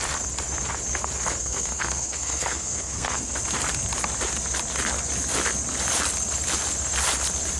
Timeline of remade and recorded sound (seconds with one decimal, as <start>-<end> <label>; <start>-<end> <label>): 0.0-1.4 recorded; 1.4-3.3 remade; 3.3-7.6 recorded